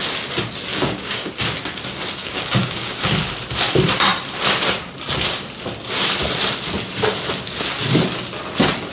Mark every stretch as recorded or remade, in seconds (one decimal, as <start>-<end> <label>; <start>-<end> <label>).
0.0-0.7 recorded; 0.7-1.3 remade; 1.3-2.2 recorded; 2.2-3.1 remade; 3.1-8.9 recorded